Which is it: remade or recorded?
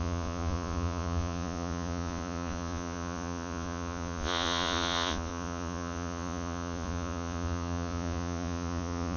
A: remade